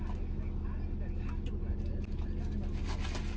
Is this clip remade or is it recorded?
recorded